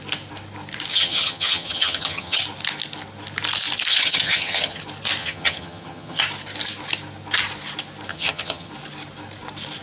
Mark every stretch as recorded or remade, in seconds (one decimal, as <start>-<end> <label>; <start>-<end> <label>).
0.0-0.9 recorded; 0.9-2.4 remade; 2.4-3.9 recorded; 3.9-4.8 remade; 4.8-5.2 recorded; 5.2-6.2 remade; 6.2-8.1 recorded; 8.1-8.7 remade; 8.7-9.8 recorded

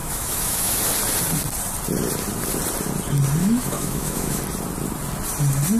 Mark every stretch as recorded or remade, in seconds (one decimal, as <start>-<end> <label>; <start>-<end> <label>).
0.0-0.8 remade; 0.8-3.4 recorded; 3.4-4.4 remade; 4.4-5.8 recorded

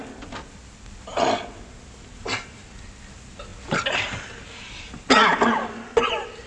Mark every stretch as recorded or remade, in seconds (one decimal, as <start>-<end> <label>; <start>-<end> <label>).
0.0-6.5 recorded

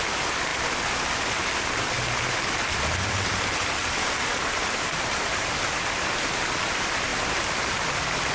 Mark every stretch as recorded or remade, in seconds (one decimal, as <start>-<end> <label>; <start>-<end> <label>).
0.0-3.8 recorded; 3.8-5.8 remade; 5.8-7.1 recorded; 7.1-8.3 remade

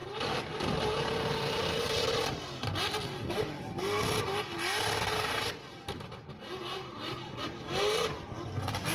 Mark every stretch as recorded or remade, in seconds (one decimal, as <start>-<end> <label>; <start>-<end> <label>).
0.0-8.9 recorded

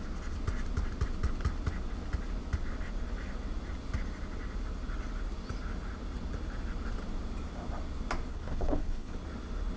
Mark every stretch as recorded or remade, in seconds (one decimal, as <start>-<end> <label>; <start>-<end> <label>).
0.0-8.3 recorded; 8.3-9.1 remade; 9.1-9.8 recorded

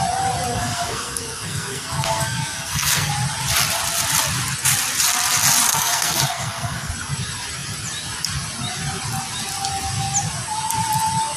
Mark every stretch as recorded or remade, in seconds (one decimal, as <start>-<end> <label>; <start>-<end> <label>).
0.0-0.5 recorded; 0.5-3.1 remade; 3.1-5.7 recorded; 5.7-6.9 remade; 6.9-11.4 recorded

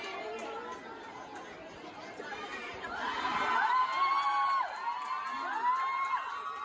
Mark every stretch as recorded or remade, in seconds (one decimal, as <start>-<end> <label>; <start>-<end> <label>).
0.0-6.6 recorded